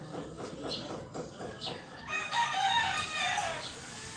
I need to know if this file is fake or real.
fake